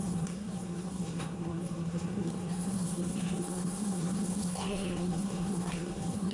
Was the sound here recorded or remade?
remade